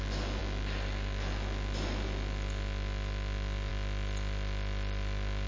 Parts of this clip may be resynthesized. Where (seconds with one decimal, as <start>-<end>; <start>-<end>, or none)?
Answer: none